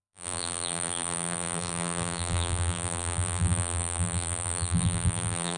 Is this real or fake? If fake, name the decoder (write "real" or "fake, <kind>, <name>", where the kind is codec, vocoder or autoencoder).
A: fake, vocoder, BigVGAN v2